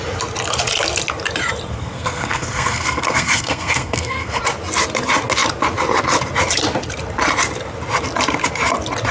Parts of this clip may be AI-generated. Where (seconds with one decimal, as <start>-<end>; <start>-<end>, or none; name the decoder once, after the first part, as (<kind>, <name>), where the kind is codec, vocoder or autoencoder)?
1.7-4.4 (codec, SNAC)